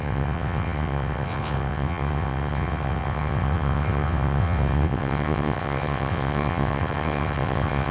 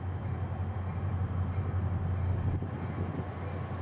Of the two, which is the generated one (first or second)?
first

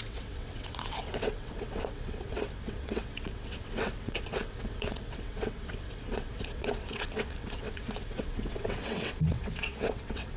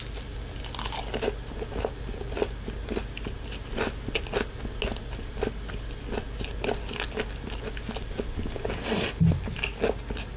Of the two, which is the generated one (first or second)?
first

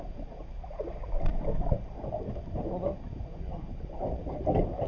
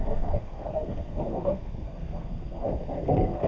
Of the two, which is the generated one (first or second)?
second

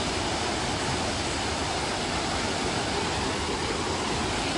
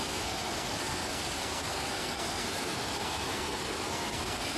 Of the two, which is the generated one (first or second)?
second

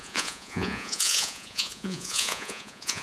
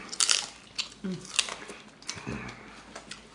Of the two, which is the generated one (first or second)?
first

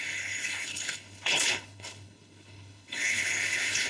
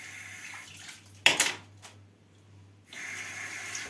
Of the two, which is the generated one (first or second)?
first